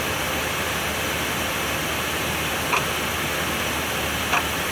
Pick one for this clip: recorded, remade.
recorded